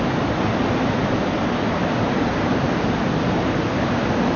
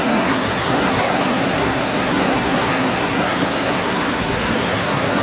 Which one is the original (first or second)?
first